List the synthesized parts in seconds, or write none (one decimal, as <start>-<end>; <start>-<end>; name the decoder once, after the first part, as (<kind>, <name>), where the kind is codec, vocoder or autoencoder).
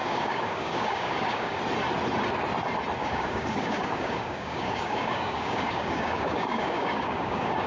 0.0-1.6 (codec, DAC); 3.0-7.7